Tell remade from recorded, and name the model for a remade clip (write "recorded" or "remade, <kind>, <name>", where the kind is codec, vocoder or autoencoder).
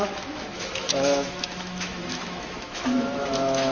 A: remade, autoencoder, DAC-VAE